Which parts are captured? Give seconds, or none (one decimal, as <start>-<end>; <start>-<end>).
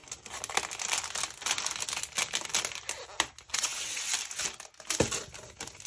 0.0-3.5; 4.1-5.9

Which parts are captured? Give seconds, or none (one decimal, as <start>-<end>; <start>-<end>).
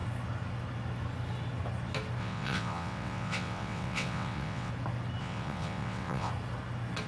0.0-2.2; 4.7-5.2; 6.3-7.1